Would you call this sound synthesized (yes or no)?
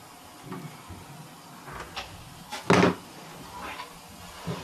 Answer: no